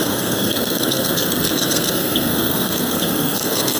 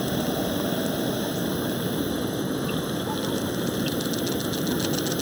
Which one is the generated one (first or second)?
first